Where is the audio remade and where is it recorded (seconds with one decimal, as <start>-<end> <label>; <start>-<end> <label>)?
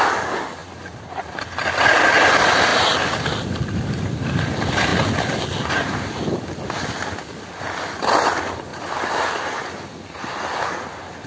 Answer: 0.0-11.3 recorded